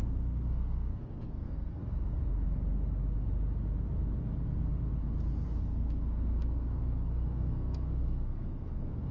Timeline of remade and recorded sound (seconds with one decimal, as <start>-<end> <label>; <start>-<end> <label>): 0.0-1.8 remade; 1.8-5.6 recorded; 5.6-9.1 remade